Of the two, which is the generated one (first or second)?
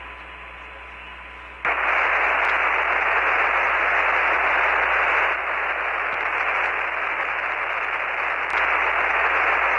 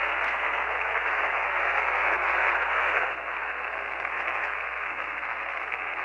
second